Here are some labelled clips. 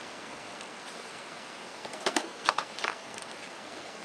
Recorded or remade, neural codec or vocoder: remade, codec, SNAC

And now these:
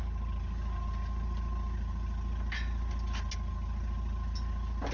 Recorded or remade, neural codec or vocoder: recorded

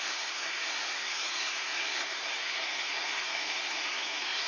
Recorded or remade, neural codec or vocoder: remade, codec, SNAC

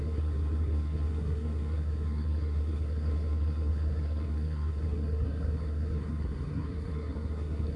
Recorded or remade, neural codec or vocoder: remade, codec, SNAC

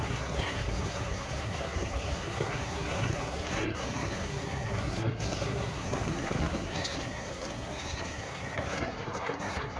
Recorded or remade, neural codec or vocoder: remade, codec, SNAC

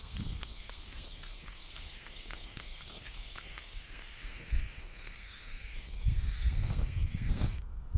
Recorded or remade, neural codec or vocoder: remade, codec, SNAC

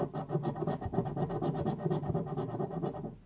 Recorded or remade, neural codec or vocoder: recorded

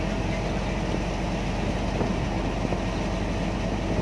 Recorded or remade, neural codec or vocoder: recorded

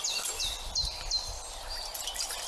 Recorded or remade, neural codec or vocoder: recorded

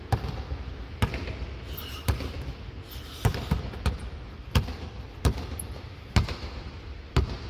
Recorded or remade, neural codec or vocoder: recorded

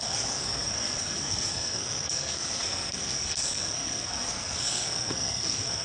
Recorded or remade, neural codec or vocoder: remade, codec, SNAC